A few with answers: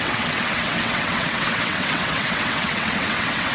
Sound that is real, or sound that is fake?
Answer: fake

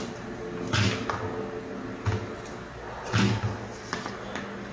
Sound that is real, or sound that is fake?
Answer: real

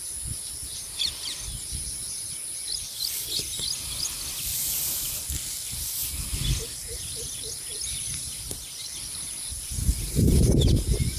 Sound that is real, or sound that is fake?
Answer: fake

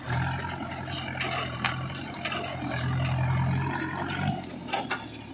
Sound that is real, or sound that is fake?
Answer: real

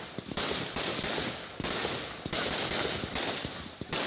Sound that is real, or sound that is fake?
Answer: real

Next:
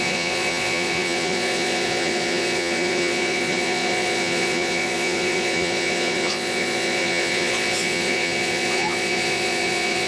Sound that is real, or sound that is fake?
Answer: fake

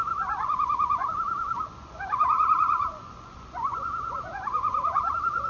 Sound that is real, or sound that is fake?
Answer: fake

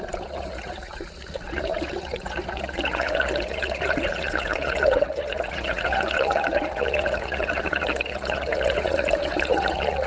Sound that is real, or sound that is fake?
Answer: fake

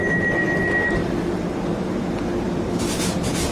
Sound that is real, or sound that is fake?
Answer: real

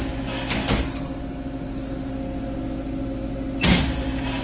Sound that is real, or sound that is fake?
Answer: real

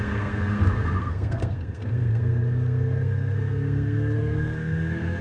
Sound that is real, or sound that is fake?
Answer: fake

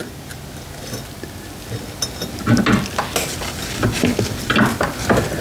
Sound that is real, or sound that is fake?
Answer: real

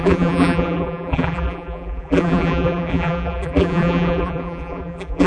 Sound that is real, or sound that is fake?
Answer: fake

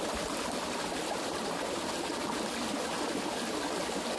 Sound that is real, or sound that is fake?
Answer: real